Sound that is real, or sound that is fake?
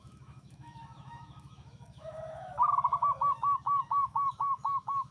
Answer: fake